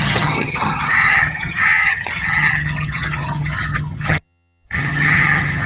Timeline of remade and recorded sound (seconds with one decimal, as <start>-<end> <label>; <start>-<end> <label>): 0.0-5.7 remade

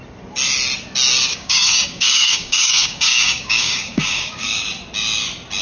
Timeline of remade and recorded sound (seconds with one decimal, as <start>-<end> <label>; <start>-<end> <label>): 0.0-1.3 recorded; 1.3-4.6 remade; 4.6-5.6 recorded